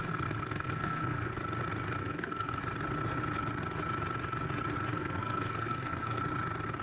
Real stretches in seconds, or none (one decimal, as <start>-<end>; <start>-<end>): 1.4-2.0; 2.6-4.9; 6.2-6.8